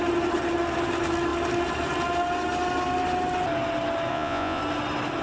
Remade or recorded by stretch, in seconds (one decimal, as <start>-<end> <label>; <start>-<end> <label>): 0.0-4.1 recorded; 4.1-4.6 remade; 4.6-5.2 recorded